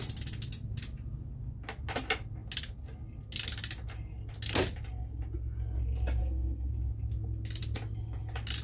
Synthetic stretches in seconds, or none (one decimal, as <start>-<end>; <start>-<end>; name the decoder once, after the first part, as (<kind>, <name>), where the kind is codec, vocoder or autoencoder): 6.2-6.7 (codec, SNAC)